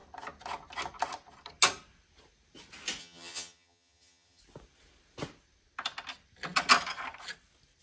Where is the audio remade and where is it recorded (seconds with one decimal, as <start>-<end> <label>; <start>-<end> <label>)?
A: 0.0-3.0 recorded; 3.0-4.4 remade; 4.4-7.8 recorded